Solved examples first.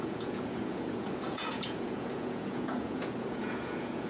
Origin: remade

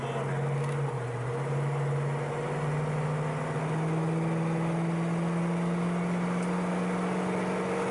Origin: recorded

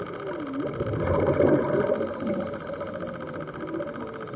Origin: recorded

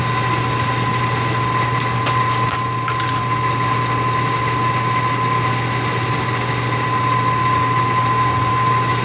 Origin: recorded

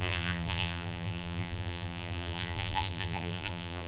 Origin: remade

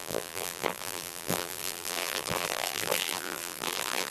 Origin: remade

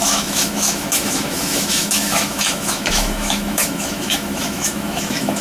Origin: remade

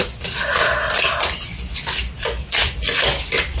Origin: remade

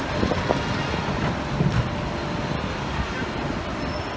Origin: recorded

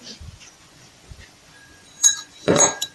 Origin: remade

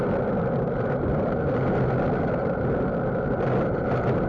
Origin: recorded